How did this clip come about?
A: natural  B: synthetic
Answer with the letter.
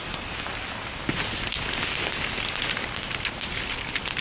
A